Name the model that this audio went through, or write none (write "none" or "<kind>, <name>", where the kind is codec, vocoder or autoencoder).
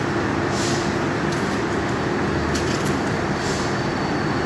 none